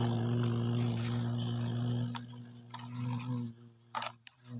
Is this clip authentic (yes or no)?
yes